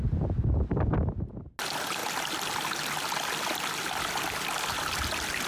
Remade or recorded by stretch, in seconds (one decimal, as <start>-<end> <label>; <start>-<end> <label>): 0.0-5.5 recorded